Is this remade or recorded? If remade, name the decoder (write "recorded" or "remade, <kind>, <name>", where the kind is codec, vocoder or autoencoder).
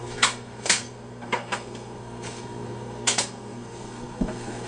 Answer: remade, codec, SNAC